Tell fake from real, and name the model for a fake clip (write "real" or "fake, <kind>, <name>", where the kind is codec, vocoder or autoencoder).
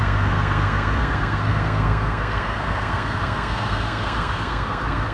fake, codec, SNAC